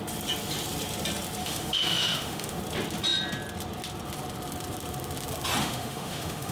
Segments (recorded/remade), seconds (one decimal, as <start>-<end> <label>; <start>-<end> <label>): 0.0-1.4 recorded; 1.4-2.6 remade; 2.6-5.6 recorded; 5.6-6.5 remade